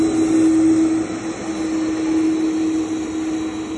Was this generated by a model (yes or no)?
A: no